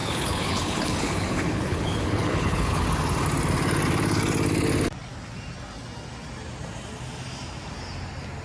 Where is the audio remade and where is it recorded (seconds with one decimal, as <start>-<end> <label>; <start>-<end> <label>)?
0.0-2.8 remade; 2.8-8.4 recorded